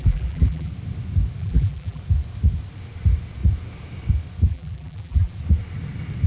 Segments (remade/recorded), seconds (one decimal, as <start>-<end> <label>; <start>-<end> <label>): 0.0-0.7 remade; 0.7-1.4 recorded; 1.4-2.0 remade; 2.0-4.5 recorded; 4.5-5.3 remade; 5.3-6.3 recorded